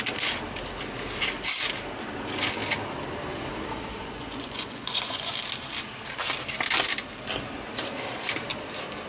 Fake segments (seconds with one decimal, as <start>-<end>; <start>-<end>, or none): 3.9-5.3